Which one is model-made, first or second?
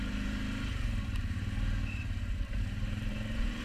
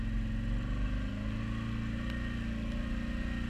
first